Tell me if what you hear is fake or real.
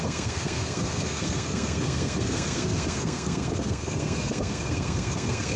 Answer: fake